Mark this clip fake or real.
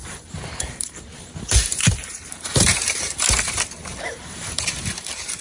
fake